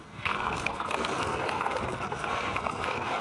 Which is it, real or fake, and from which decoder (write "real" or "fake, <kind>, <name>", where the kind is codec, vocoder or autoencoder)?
fake, codec, SNAC